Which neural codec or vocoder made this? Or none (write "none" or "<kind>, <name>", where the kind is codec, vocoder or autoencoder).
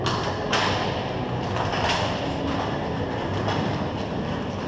none